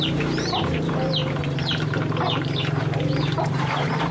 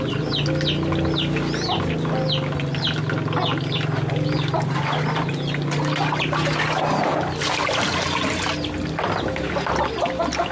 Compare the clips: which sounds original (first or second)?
second